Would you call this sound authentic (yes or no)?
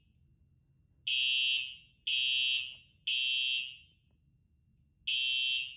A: yes